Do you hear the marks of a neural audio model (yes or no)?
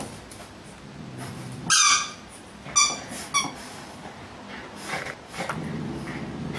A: no